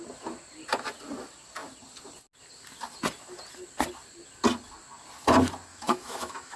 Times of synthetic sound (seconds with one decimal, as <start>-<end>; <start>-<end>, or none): 5.7-6.6